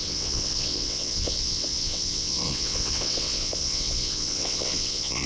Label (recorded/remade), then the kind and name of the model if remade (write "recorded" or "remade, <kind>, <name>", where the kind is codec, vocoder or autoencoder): remade, vocoder, WaveNeXt